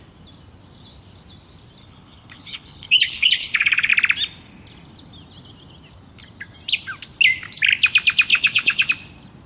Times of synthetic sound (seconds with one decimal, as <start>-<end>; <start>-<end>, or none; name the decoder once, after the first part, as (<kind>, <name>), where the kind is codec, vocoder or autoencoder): 1.8-3.9 (codec, HILCodec); 8.3-8.9